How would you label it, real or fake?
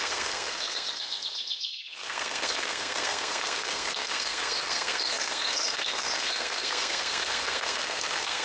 fake